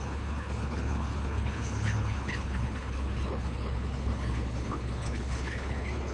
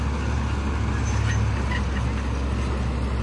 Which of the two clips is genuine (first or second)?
second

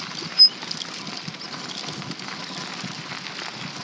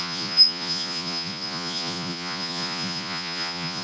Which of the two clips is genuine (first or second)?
first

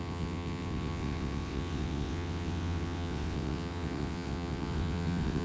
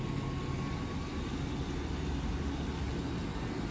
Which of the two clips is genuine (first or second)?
second